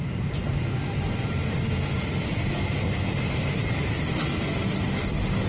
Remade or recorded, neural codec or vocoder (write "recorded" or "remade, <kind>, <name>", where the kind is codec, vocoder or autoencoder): recorded